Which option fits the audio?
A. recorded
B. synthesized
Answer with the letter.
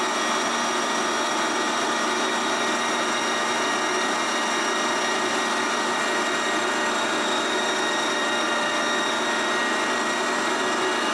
A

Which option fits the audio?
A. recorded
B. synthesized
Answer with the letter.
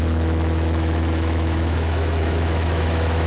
B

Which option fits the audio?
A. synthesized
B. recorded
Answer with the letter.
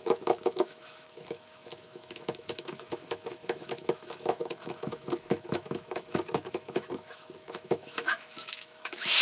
A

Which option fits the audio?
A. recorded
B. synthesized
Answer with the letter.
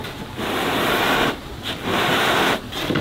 A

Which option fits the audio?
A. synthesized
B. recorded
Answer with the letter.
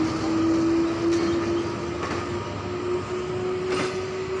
B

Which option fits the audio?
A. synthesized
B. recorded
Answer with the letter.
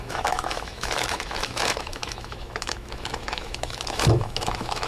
A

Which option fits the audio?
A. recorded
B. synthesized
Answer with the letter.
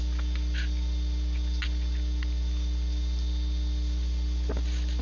A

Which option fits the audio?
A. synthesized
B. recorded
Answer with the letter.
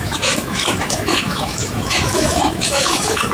A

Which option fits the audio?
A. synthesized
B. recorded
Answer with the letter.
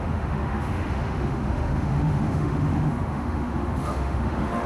A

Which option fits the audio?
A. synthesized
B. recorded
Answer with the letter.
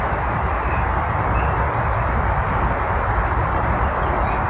B